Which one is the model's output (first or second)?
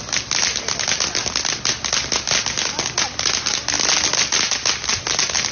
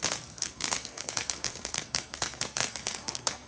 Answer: second